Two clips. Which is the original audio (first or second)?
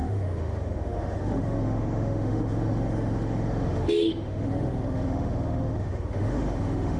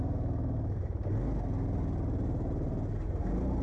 second